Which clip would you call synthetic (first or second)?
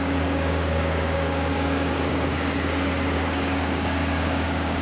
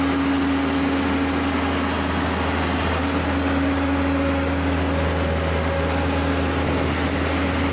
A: first